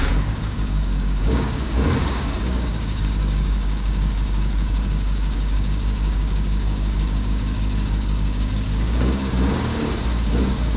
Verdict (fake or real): fake